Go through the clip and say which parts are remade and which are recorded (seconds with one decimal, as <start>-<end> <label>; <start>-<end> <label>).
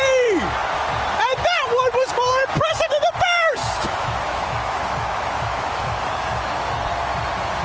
0.0-3.6 recorded; 3.6-6.6 remade; 6.6-7.6 recorded